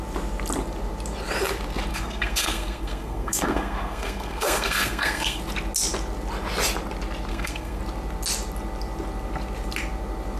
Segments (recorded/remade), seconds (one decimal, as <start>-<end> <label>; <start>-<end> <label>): 0.0-1.9 recorded; 1.9-5.4 remade; 5.4-7.3 recorded; 7.3-7.8 remade; 7.8-10.4 recorded